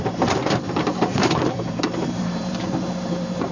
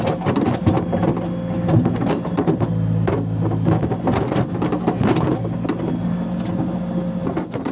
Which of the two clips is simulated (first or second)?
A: first